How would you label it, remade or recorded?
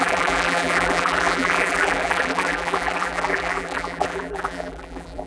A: remade